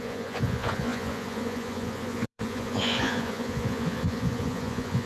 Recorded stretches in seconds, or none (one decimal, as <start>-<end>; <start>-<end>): none